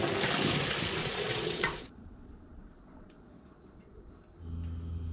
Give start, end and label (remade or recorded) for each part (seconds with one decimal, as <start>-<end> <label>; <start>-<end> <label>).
0.0-1.0 recorded; 1.0-4.1 remade; 4.1-5.1 recorded